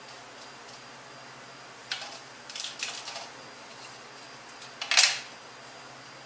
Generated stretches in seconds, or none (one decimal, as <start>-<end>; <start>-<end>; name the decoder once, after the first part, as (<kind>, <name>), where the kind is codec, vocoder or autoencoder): 1.8-2.7 (vocoder, BigVGAN v2)